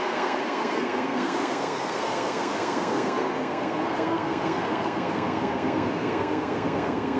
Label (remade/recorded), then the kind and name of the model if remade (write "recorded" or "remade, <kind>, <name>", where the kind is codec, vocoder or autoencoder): remade, codec, SNAC